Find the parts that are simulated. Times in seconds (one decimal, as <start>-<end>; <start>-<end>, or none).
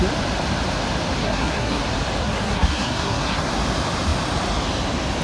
1.2-1.8; 2.2-3.5